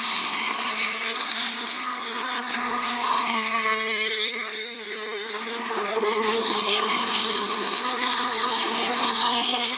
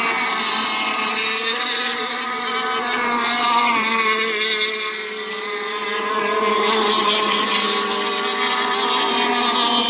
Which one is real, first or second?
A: second